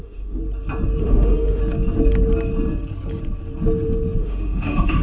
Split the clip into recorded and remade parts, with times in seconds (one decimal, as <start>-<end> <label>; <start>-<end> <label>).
0.0-0.4 remade; 0.4-1.0 recorded; 1.0-1.6 remade; 1.6-4.2 recorded; 4.2-5.0 remade